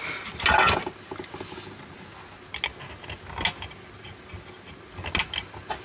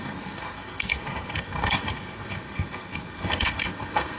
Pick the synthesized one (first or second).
second